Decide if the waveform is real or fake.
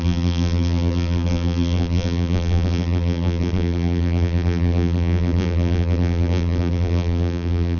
fake